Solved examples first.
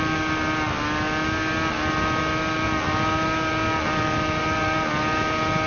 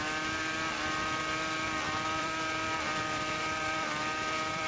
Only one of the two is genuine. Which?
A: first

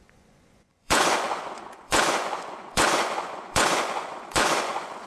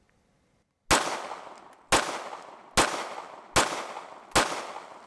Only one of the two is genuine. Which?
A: second